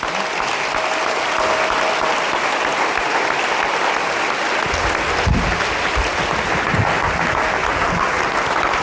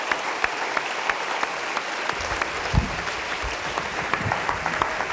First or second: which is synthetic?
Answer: second